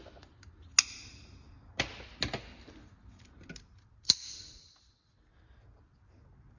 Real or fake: real